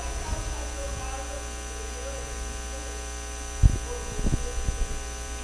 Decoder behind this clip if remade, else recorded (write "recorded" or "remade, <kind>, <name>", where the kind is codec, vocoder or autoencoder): recorded